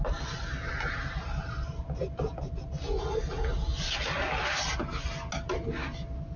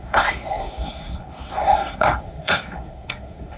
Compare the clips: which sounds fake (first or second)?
second